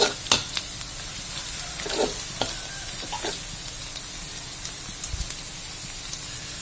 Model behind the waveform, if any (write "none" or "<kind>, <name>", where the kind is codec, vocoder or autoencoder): none